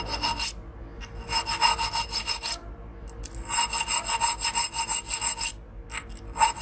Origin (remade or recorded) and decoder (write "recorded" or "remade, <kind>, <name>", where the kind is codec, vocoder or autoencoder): recorded